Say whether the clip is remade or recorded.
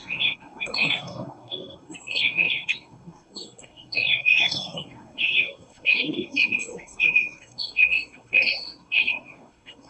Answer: remade